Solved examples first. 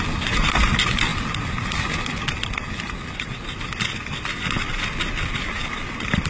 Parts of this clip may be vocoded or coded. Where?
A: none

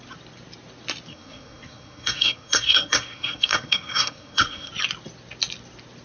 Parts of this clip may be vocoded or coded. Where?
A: 1.1-4.7

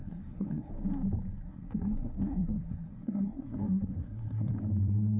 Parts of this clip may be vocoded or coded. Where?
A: 0.0-0.7; 1.4-4.5

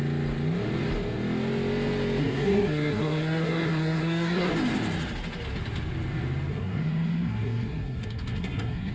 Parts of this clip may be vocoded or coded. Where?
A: 2.2-4.5; 6.5-8.9

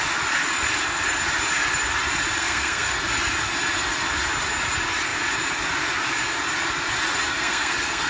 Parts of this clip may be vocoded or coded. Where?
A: 2.4-2.9; 7.3-8.1

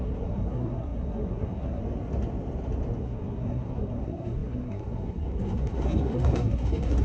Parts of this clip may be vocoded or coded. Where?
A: 0.0-1.8; 3.0-7.0

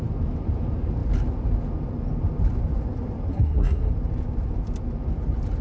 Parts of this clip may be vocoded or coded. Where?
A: 3.3-3.9

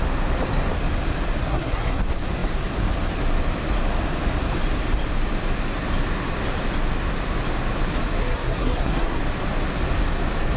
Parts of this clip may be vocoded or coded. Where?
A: 1.4-2.0; 8.2-9.2